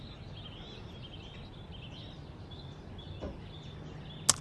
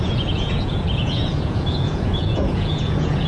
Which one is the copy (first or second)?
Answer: second